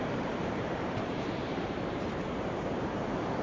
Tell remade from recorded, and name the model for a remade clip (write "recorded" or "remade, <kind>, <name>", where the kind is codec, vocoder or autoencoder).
remade, vocoder, BigVGAN v2